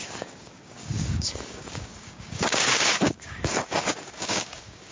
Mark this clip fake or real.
fake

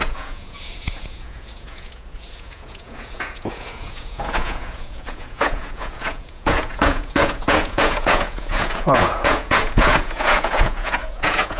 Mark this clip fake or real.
fake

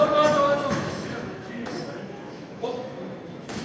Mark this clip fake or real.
fake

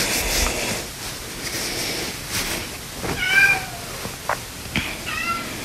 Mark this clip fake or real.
real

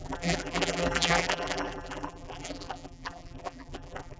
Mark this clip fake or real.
fake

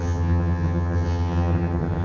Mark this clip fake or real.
fake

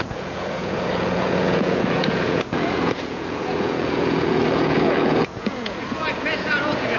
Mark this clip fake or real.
fake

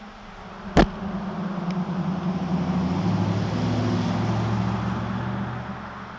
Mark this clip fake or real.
real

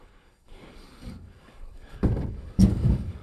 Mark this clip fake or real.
fake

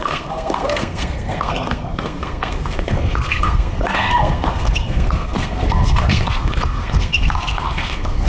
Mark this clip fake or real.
fake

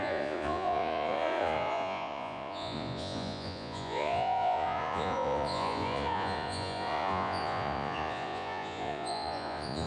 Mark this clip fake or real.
fake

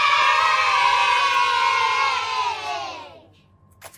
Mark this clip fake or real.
real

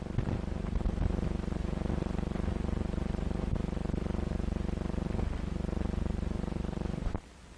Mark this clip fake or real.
real